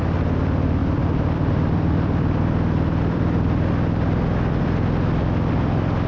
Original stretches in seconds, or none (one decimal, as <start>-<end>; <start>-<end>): 0.0-0.8; 3.7-6.1